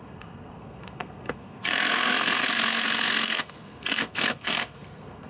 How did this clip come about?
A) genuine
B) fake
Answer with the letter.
B